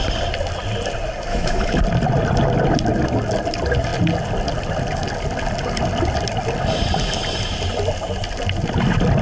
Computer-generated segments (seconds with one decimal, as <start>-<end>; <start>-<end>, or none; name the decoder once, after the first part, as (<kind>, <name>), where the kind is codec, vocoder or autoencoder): 1.3-1.8 (autoencoder, DAC-VAE)